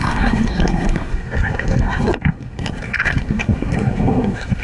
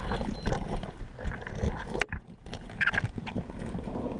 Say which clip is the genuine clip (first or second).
second